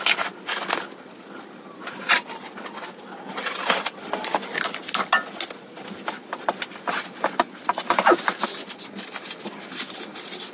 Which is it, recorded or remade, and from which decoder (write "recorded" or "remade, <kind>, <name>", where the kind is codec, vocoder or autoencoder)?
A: recorded